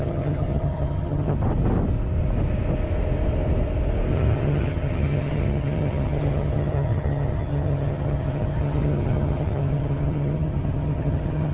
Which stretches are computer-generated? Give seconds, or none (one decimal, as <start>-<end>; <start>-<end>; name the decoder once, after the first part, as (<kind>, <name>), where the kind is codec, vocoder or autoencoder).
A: 0.0-1.4 (vocoder, HiFi-GAN); 4.1-11.5